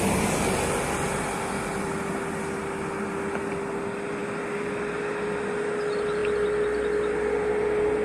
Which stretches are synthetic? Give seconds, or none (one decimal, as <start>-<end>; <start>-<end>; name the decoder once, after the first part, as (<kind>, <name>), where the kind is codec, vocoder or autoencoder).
none